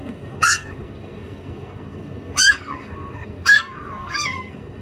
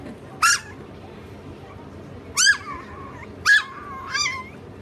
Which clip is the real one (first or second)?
second